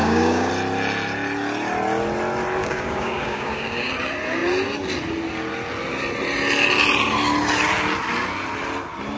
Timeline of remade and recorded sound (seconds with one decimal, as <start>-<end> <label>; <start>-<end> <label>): 0.0-0.5 remade; 0.5-2.6 recorded; 2.6-3.9 remade; 3.9-9.2 recorded